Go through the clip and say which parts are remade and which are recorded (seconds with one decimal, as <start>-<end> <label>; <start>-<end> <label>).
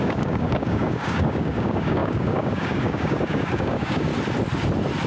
0.0-4.1 remade; 4.1-5.1 recorded